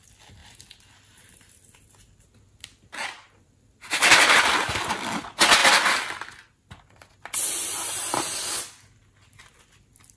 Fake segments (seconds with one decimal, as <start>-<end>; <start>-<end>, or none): none